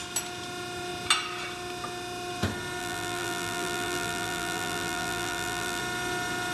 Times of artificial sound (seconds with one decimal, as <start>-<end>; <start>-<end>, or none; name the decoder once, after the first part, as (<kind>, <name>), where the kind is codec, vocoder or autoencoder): 2.8-5.8 (vocoder, BigVGAN v2)